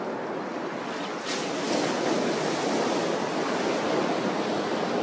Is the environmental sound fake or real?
real